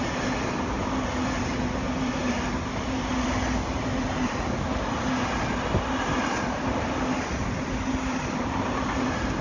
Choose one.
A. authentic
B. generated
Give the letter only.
A